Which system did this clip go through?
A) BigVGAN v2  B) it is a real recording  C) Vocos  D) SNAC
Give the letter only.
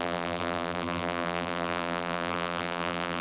A